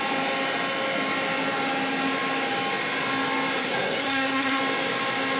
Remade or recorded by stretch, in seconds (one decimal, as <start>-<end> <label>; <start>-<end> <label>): 0.0-3.6 recorded; 3.6-4.6 remade; 4.6-5.4 recorded